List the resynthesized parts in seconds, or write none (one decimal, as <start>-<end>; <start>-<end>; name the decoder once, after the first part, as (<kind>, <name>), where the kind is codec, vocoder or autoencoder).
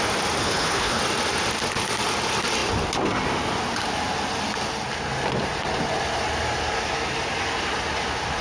0.4-1.0 (codec, HILCodec)